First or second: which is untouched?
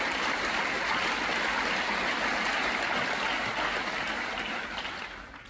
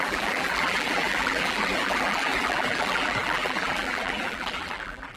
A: first